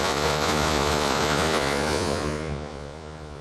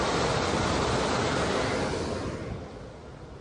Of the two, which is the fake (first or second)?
first